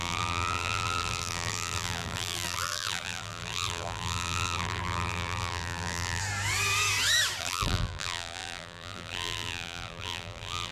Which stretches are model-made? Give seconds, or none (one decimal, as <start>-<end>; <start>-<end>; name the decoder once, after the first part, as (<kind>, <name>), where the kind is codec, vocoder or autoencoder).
0.0-6.2 (vocoder, BigVGAN v2); 7.4-10.7